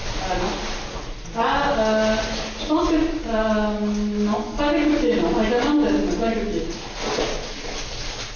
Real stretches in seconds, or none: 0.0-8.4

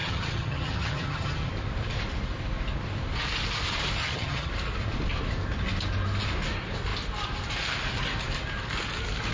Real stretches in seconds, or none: 1.5-4.0; 4.5-9.3

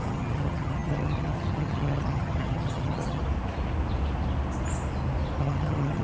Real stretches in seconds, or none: 3.2-5.4

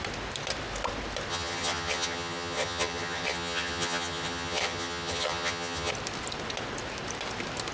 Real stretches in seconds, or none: 0.0-1.3; 5.9-7.7

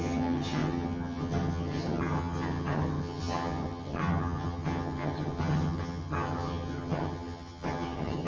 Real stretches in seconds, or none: none

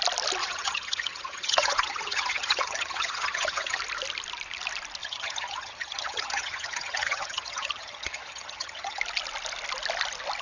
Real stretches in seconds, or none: 0.0-0.4; 3.8-5.0; 9.0-10.4

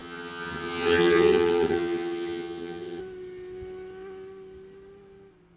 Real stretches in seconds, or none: 3.0-5.6

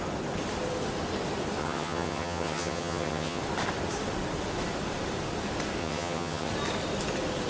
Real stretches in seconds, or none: 0.0-1.6; 3.4-5.8; 6.5-7.5